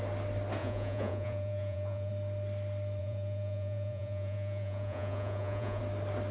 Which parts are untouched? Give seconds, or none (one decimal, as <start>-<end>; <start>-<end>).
0.0-0.6; 2.1-3.0; 5.8-6.3